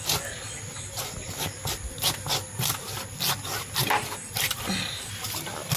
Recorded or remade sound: recorded